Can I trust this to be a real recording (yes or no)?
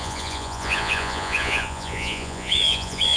no